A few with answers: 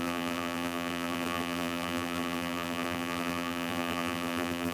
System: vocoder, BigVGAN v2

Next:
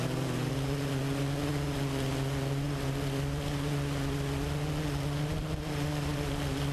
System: none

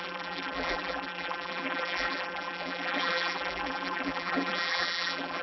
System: vocoder, BigVGAN v2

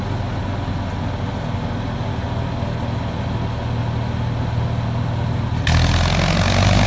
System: none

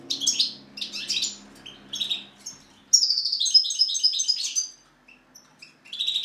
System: none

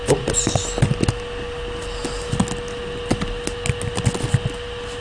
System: none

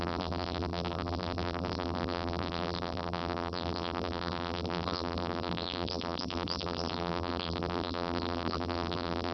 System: vocoder, BigVGAN v2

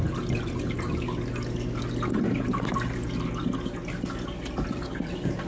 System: none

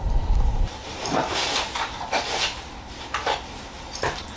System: vocoder, BigVGAN v2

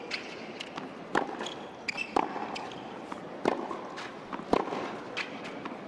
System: none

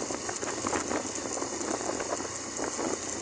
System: none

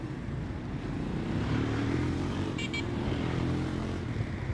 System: vocoder, BigVGAN v2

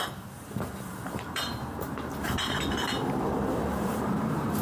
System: vocoder, BigVGAN v2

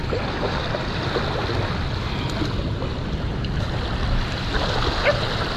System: none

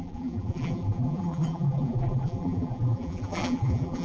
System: vocoder, BigVGAN v2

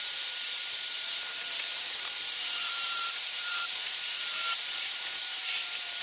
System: vocoder, BigVGAN v2